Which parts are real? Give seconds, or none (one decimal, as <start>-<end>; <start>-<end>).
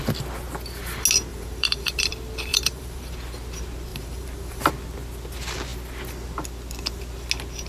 0.0-1.3; 2.1-2.5; 3.1-3.9; 4.7-7.7